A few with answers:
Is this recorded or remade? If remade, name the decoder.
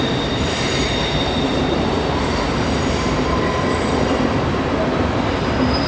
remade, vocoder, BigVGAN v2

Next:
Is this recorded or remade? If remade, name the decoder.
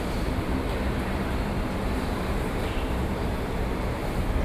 remade, vocoder, BigVGAN v2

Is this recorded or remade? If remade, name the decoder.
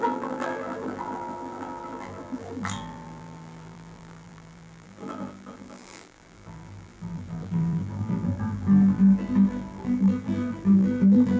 remade, vocoder, BigVGAN v2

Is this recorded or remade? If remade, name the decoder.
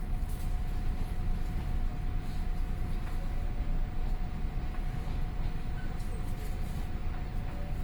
recorded